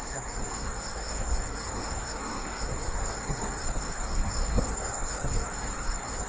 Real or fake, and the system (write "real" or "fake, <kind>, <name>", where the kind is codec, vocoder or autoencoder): fake, codec, SNAC